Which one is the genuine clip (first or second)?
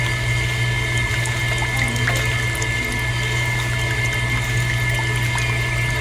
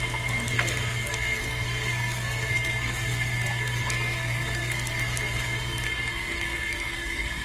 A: first